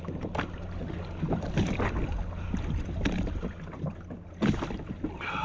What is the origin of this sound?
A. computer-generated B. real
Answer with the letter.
B